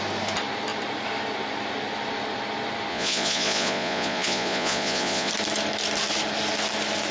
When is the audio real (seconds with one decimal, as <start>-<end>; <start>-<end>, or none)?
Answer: 0.0-2.9; 5.3-7.1